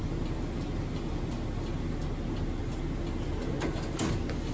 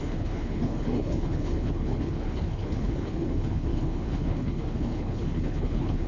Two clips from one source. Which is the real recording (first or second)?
first